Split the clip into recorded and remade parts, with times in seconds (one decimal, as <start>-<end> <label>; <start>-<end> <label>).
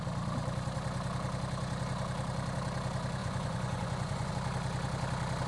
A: 0.0-3.2 recorded; 3.2-4.3 remade; 4.3-5.5 recorded